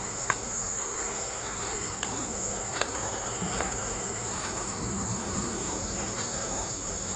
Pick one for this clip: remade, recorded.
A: remade